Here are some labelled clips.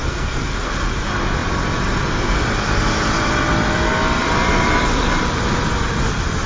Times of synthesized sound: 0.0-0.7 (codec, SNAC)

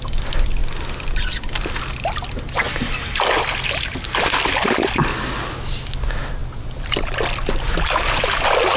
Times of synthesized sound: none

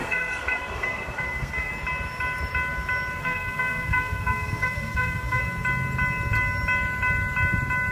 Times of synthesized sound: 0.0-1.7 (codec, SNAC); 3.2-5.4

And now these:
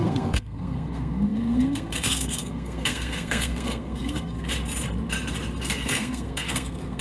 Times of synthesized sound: 0.0-4.5 (codec, SNAC); 5.6-7.0

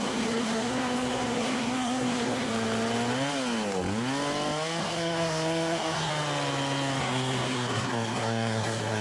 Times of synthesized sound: 0.0-2.5 (codec, SNAC); 4.8-6.1; 7.0-9.0

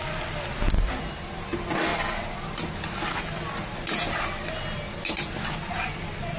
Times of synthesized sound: none

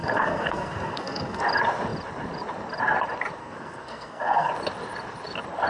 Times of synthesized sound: 0.0-1.4 (codec, SNAC); 3.4-4.5